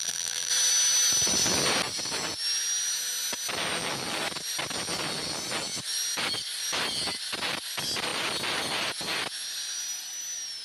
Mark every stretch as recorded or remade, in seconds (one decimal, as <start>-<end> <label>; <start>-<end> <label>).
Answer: 0.0-0.5 remade; 0.5-10.6 recorded